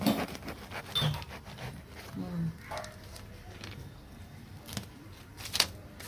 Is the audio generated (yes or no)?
no